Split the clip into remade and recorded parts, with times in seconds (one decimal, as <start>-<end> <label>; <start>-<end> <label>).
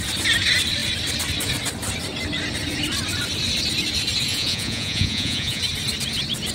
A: 0.0-4.3 recorded; 4.3-5.6 remade; 5.6-6.5 recorded